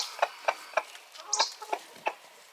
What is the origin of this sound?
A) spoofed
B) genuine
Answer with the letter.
B